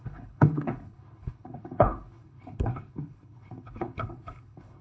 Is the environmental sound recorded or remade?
remade